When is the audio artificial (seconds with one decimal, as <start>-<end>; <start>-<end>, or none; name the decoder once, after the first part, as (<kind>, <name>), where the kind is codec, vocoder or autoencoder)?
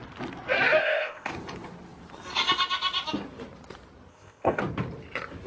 0.8-1.3 (codec, ZipCodec); 4.1-4.6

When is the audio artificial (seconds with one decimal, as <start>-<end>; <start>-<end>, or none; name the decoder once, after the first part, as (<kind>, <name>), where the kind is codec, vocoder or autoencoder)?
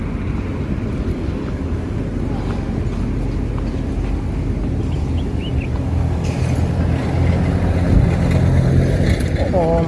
1.1-2.0 (codec, DAC); 5.7-6.4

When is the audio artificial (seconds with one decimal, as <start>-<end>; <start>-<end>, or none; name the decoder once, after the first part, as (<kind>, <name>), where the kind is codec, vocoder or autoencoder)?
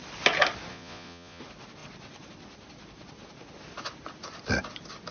0.7-1.4 (vocoder, Vocos)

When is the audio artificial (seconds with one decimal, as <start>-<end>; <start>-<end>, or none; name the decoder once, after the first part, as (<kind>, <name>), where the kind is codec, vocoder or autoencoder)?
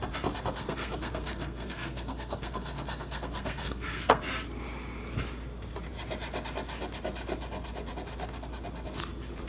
0.6-4.2 (codec, SNAC)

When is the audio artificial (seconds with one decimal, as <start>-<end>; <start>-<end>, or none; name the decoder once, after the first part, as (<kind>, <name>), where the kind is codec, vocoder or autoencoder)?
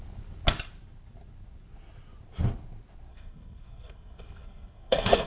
3.1-5.3 (codec, SNAC)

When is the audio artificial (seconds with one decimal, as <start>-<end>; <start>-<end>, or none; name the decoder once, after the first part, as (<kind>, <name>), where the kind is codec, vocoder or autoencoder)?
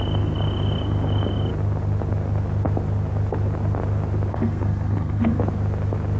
4.3-5.4 (codec, SNAC)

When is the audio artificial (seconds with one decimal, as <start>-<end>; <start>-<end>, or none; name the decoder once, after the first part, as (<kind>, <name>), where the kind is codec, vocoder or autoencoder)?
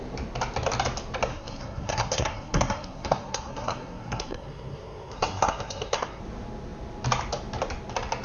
1.3-6.2 (codec, SNAC)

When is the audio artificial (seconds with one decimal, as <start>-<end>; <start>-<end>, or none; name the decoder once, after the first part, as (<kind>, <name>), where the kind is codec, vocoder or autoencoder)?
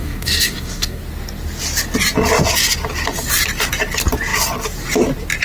0.0-1.0 (codec, DAC)